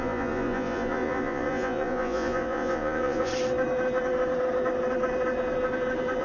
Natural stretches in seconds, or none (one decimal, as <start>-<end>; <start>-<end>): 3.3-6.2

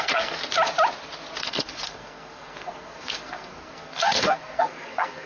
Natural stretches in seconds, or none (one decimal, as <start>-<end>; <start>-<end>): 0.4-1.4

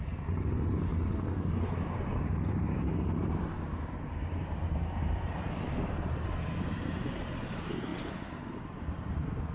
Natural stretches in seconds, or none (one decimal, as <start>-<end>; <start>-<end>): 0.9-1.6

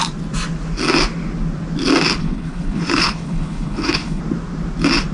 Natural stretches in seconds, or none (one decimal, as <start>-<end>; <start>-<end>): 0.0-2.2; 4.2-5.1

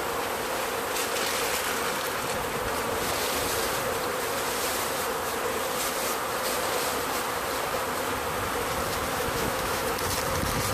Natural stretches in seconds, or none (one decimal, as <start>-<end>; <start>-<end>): 0.0-9.1; 9.8-10.7